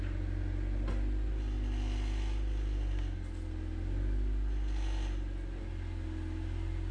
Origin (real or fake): real